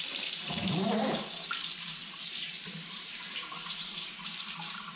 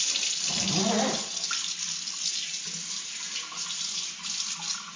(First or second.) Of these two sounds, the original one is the second